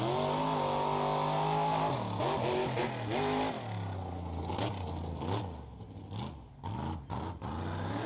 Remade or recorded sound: recorded